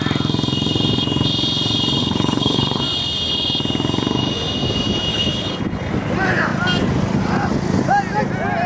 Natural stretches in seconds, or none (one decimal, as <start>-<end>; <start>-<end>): 0.0-2.0; 2.8-5.1; 5.9-8.7